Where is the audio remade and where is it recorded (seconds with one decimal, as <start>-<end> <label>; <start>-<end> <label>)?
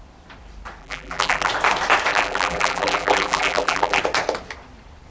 0.0-0.8 recorded; 0.8-1.5 remade; 1.5-2.1 recorded; 2.1-4.0 remade; 4.0-5.1 recorded